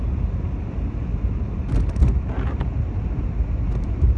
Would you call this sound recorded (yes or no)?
yes